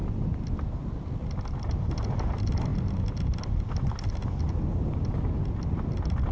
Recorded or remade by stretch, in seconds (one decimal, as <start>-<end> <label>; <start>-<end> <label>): 0.0-6.3 recorded